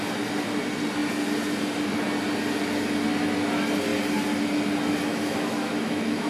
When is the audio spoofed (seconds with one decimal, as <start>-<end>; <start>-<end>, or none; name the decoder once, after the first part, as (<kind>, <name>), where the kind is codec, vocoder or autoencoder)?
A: 5.1-6.3 (autoencoder, DAC-VAE)